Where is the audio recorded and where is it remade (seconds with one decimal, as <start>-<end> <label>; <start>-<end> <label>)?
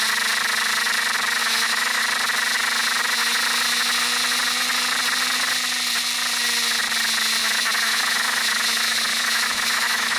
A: 0.0-1.4 recorded; 1.4-2.0 remade; 2.0-7.4 recorded; 7.4-10.2 remade